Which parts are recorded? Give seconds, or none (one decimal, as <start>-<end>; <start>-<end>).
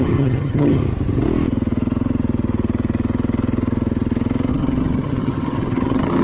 0.8-4.5